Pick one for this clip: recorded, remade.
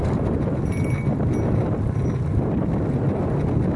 recorded